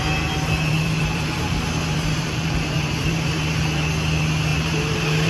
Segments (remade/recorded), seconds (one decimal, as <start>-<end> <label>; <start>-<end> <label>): 0.0-0.7 recorded; 0.7-3.9 remade; 3.9-4.5 recorded; 4.5-5.3 remade